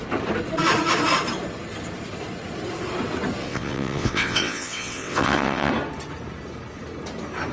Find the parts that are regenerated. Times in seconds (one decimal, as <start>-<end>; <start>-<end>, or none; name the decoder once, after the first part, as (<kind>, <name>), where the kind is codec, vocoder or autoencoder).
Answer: 3.4-5.7 (vocoder, WaveNeXt)